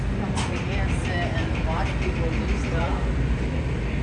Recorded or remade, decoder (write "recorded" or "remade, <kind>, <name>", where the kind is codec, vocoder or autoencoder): recorded